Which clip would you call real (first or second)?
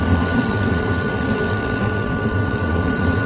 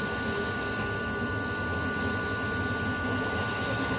second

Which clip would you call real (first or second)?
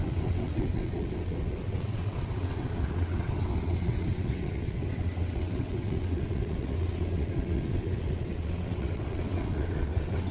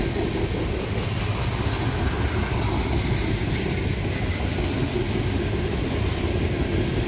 second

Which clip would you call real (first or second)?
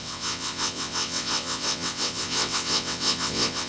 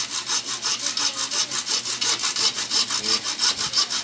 second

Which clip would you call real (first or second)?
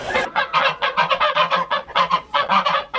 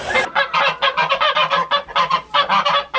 second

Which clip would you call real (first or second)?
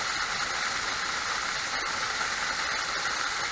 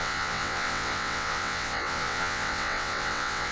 first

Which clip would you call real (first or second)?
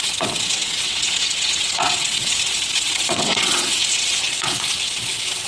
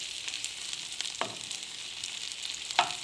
second